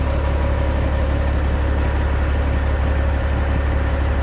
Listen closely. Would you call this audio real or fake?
real